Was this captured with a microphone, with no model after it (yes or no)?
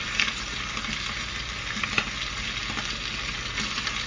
yes